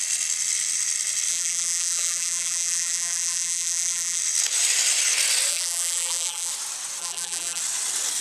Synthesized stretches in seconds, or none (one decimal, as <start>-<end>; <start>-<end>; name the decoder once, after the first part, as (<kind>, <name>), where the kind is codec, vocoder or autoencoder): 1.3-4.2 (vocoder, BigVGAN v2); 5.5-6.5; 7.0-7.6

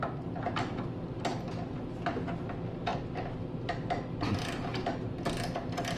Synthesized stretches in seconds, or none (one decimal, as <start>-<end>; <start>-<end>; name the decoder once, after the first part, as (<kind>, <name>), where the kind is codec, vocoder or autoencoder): none

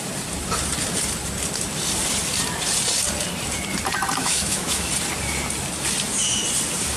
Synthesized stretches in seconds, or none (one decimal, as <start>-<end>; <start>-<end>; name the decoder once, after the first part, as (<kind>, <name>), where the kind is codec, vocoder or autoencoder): 4.2-4.9 (autoencoder, DAC-VAE)

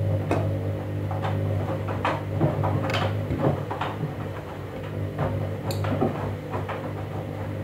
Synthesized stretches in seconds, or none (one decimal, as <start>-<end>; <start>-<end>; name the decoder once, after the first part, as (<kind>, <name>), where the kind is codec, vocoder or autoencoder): 2.9-4.8 (vocoder, BigVGAN v2)

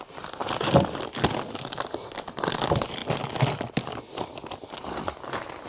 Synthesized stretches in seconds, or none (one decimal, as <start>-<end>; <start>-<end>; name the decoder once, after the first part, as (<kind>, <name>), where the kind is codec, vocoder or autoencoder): none